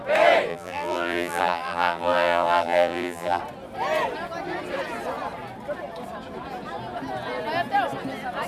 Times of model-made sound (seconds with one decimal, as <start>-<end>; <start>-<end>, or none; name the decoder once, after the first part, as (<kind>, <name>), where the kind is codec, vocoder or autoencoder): 0.5-3.4 (vocoder, BigVGAN v2)